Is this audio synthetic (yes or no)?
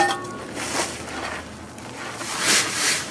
no